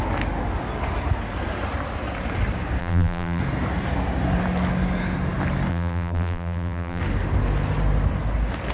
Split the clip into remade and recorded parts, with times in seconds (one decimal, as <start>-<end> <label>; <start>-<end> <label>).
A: 0.0-2.8 recorded; 2.8-3.4 remade; 3.4-5.7 recorded; 5.7-7.0 remade; 7.0-8.7 recorded